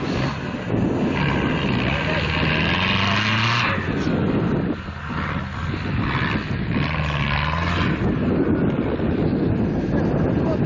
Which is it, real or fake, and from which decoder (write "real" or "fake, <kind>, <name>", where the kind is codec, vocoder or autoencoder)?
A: real